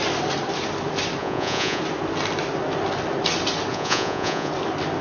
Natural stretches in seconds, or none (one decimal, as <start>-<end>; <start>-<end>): 0.0-1.2; 1.8-3.7; 4.5-5.0